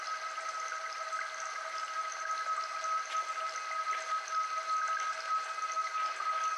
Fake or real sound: real